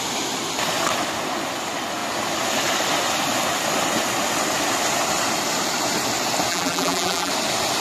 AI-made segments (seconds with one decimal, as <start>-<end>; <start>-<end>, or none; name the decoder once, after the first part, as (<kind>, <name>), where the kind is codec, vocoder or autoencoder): 6.5-7.3 (vocoder, BigVGAN v2)